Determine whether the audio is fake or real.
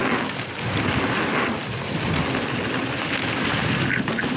real